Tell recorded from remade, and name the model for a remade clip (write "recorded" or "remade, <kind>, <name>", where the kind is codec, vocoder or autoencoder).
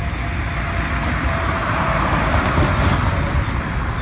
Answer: recorded